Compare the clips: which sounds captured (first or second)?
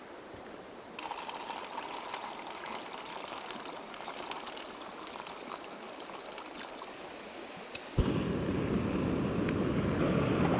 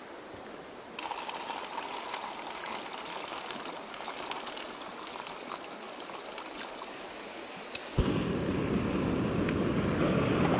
second